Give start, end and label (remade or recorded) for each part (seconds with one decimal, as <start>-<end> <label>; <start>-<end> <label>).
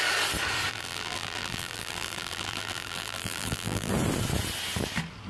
0.0-0.7 recorded; 0.7-3.9 remade; 3.9-5.3 recorded